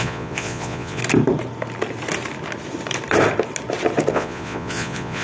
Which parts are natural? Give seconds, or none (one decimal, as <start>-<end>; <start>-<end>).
1.0-4.1